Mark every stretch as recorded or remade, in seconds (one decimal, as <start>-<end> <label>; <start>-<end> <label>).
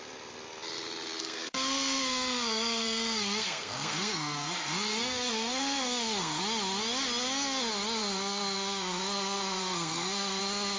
0.0-1.2 recorded; 1.2-6.4 remade; 6.4-8.0 recorded; 8.0-10.4 remade; 10.4-10.8 recorded